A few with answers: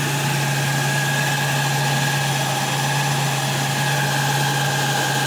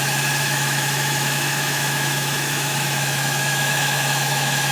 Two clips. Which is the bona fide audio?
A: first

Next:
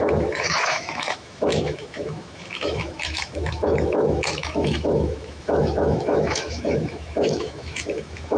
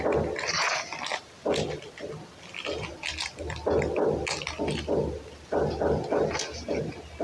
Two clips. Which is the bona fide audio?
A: second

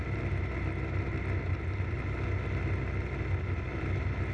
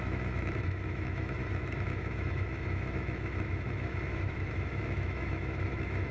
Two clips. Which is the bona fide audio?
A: first